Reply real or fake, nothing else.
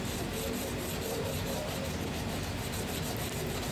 real